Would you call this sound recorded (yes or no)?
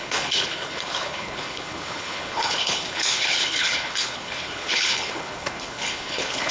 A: no